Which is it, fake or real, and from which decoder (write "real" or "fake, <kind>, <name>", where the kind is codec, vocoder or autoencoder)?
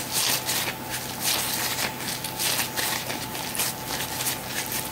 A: real